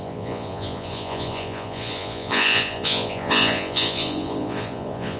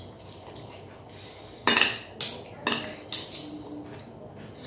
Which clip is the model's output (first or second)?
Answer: first